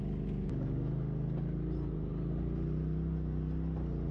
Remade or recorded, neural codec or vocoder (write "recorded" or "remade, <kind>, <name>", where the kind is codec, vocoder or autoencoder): recorded